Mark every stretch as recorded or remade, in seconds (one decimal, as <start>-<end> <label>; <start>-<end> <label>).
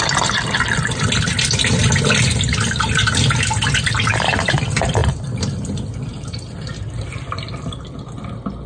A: 0.0-5.0 recorded; 5.0-8.2 remade; 8.2-8.7 recorded